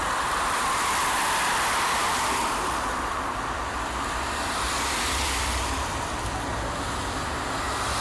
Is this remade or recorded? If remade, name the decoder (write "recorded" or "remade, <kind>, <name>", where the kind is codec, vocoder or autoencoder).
remade, vocoder, BigVGAN v2